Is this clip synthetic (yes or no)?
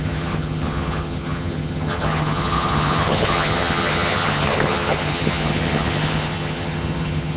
yes